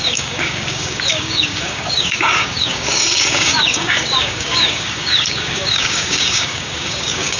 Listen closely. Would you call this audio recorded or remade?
remade